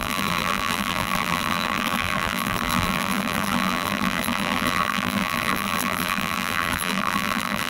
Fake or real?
fake